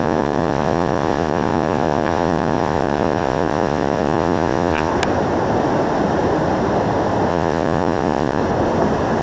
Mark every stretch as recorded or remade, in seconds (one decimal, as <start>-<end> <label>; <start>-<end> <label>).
0.0-4.9 remade; 4.9-7.3 recorded; 7.3-8.4 remade; 8.4-9.2 recorded